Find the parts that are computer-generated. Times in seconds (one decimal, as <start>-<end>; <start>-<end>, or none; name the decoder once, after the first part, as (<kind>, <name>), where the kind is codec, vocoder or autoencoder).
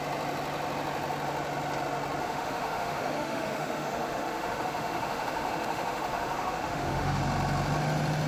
2.2-7.2 (autoencoder, DAC-VAE)